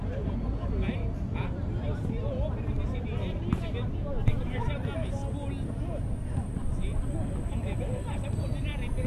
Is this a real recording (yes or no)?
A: yes